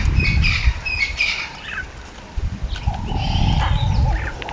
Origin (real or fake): real